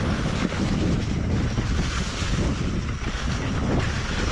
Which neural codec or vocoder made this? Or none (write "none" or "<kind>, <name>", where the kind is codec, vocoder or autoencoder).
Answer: none